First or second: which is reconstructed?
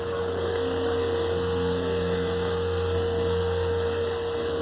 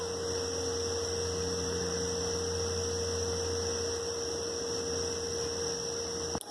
first